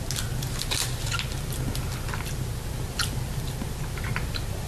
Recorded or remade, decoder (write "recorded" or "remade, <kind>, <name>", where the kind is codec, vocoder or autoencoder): recorded